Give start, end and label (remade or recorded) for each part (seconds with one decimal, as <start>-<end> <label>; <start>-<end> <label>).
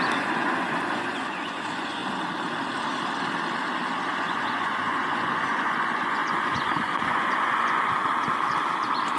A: 0.0-2.0 remade; 2.0-4.2 recorded; 4.2-8.0 remade; 8.0-9.2 recorded